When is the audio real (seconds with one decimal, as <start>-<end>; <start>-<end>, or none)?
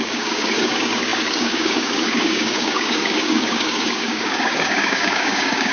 none